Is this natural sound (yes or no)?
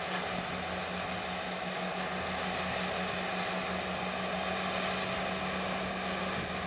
yes